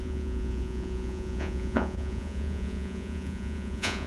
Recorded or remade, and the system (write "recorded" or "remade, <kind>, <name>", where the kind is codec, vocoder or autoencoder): remade, vocoder, Vocos